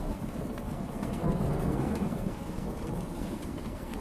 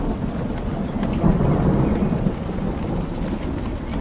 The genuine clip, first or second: second